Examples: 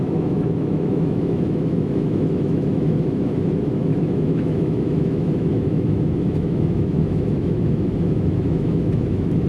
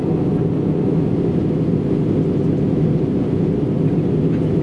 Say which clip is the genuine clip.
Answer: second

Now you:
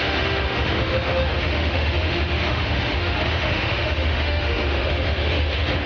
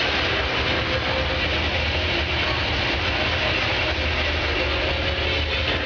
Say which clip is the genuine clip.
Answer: second